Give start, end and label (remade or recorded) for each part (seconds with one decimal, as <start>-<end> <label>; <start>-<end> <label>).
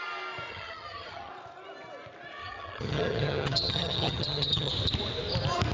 0.0-0.5 recorded; 0.5-1.3 remade; 1.3-2.4 recorded; 2.4-4.7 remade; 4.7-5.7 recorded